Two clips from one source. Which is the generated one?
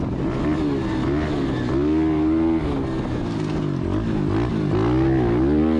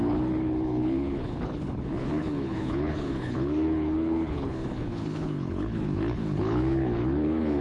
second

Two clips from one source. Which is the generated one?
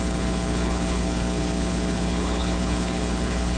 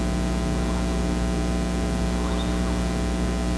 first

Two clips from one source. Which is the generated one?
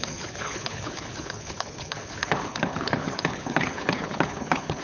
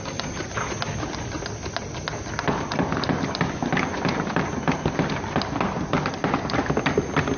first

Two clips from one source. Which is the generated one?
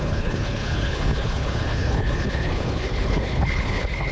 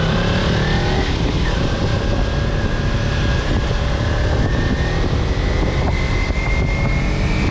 first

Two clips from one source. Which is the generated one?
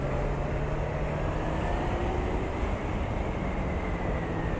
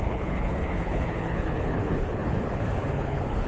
second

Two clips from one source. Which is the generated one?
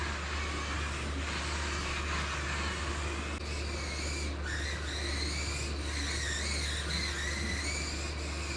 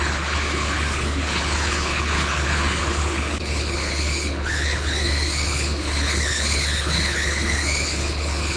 second